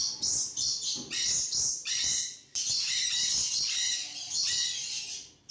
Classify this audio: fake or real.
real